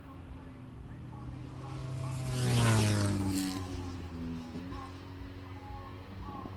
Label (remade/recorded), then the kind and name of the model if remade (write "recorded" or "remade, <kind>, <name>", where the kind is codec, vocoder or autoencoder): recorded